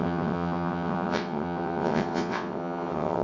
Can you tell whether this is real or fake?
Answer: fake